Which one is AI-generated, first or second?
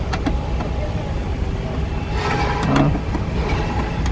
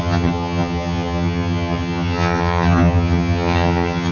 second